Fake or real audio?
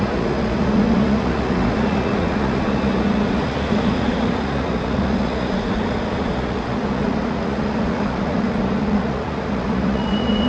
fake